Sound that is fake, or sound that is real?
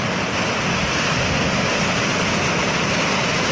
real